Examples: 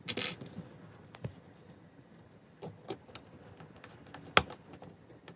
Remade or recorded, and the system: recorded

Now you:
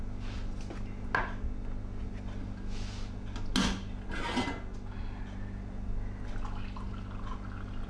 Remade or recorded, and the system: recorded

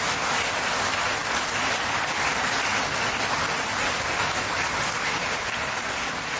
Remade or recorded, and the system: recorded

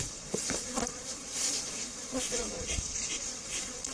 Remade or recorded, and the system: remade, vocoder, Vocos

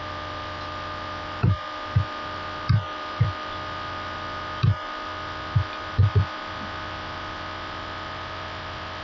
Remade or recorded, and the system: recorded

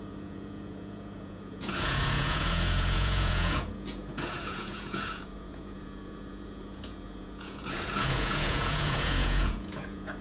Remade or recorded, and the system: remade, vocoder, Vocos